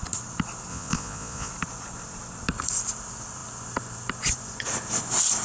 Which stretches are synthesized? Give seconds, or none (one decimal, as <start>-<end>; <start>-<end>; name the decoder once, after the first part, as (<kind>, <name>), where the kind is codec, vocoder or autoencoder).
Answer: 0.7-1.5 (vocoder, Vocos)

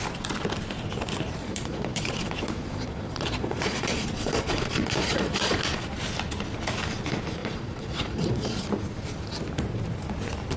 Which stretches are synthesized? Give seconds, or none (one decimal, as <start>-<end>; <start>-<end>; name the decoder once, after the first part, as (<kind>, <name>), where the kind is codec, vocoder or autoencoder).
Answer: 1.4-5.6 (vocoder, Vocos); 7.4-8.7

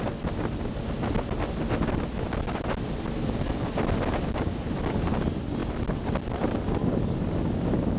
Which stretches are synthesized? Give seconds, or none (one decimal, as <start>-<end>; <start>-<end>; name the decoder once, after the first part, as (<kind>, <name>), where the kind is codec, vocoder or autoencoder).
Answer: none